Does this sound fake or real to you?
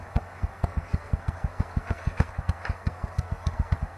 fake